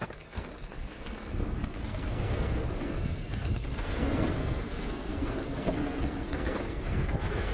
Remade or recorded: remade